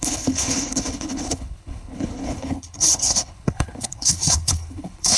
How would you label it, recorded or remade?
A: remade